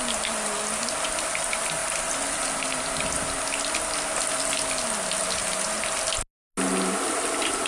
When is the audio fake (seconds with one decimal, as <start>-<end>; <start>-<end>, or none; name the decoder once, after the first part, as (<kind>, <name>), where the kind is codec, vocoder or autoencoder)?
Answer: none